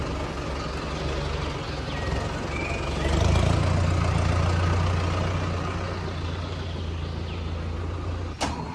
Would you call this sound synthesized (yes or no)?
no